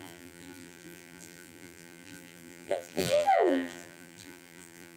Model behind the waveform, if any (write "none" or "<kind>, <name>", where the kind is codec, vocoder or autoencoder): vocoder, BigVGAN v2